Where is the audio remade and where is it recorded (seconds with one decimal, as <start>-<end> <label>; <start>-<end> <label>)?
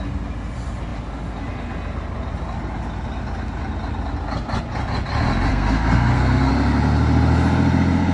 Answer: 0.0-5.5 recorded; 5.5-6.5 remade; 6.5-8.1 recorded